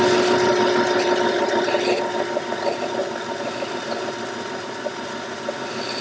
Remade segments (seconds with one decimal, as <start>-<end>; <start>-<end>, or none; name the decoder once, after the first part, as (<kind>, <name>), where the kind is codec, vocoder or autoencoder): none